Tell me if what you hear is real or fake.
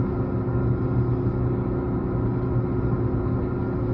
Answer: real